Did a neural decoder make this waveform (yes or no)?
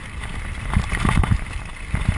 no